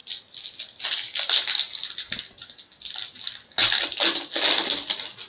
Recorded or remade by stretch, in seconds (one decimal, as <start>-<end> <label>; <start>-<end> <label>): 0.0-5.3 recorded